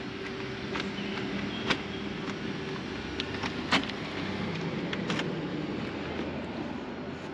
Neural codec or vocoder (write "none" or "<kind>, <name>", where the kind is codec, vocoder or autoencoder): none